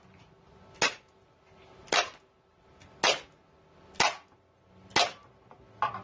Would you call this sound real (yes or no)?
yes